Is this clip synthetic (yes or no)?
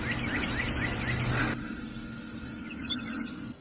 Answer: no